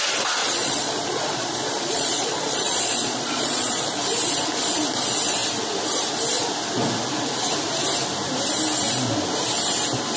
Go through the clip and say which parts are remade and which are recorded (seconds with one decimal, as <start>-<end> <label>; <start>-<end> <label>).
0.0-0.4 recorded; 0.4-4.0 remade; 4.0-10.2 recorded